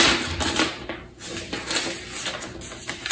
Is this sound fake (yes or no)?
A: no